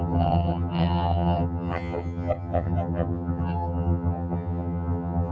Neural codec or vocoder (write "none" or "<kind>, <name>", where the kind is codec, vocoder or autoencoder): vocoder, HiFi-GAN